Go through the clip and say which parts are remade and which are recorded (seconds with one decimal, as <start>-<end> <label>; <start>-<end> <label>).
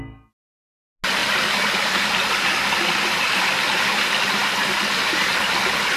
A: 0.0-6.0 recorded